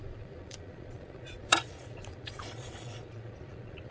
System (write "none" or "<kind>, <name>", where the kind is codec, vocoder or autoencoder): vocoder, Vocos